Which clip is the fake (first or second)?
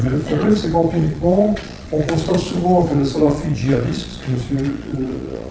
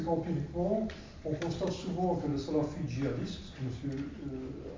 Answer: first